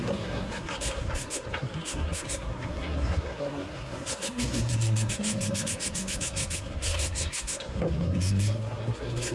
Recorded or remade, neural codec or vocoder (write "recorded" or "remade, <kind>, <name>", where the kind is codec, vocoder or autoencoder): remade, codec, SNAC